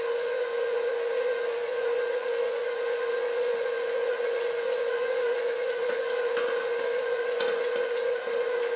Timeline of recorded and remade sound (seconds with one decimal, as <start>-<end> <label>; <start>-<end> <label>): 0.0-8.8 remade

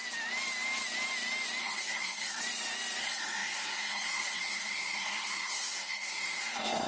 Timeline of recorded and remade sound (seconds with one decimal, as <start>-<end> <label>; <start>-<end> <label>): 0.0-1.6 recorded; 1.6-2.4 remade; 2.4-3.0 recorded; 3.0-6.9 remade

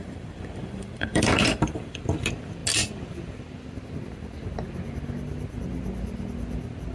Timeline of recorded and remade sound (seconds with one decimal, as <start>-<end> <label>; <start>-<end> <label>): 0.0-2.0 remade; 2.0-6.9 recorded

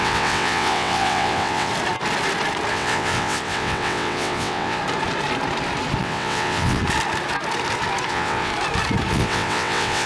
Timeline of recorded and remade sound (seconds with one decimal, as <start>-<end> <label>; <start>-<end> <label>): 0.0-1.7 remade; 1.7-2.7 recorded; 2.7-4.8 remade; 4.8-6.0 recorded; 6.0-6.8 remade; 6.8-8.1 recorded; 8.1-8.5 remade; 8.5-9.1 recorded; 9.1-10.1 remade

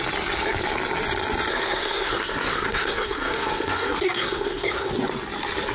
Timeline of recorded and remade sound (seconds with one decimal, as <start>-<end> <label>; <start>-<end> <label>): 0.0-1.5 recorded; 1.5-4.9 remade; 4.9-5.7 recorded

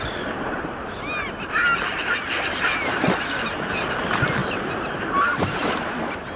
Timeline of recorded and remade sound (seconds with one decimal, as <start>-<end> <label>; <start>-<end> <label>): 0.0-6.4 recorded

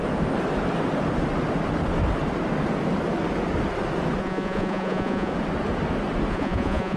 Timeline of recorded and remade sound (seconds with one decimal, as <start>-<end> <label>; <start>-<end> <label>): 0.0-4.2 recorded; 4.2-5.3 remade; 5.3-6.3 recorded; 6.3-7.0 remade

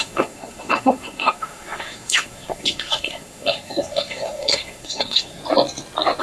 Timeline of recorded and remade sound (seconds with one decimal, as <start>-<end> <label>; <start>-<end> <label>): 0.0-5.4 remade; 5.4-6.2 recorded